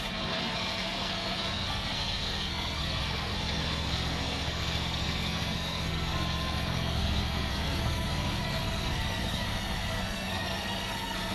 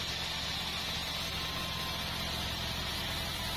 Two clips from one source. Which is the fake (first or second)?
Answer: first